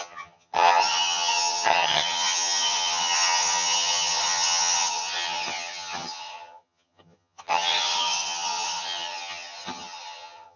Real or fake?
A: fake